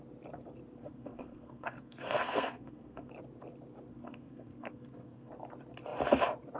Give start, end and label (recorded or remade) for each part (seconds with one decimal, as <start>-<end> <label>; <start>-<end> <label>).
0.0-0.8 recorded; 0.8-3.1 remade; 3.1-3.9 recorded; 3.9-5.3 remade; 5.3-6.6 recorded